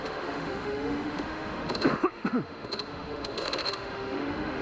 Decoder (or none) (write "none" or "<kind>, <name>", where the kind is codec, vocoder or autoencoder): autoencoder, DAC-VAE